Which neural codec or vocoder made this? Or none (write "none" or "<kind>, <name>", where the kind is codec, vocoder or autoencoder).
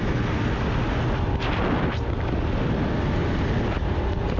none